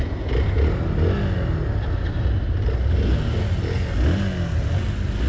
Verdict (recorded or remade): recorded